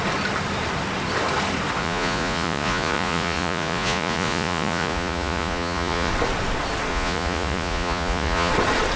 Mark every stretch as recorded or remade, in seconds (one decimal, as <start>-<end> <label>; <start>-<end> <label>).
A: 0.0-1.8 recorded; 1.8-6.1 remade; 6.1-6.9 recorded; 6.9-8.5 remade; 8.5-9.0 recorded